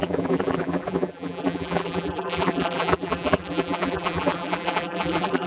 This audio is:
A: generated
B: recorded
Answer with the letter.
A